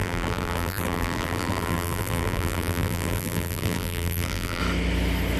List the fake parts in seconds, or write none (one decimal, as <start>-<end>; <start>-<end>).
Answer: 0.0-4.6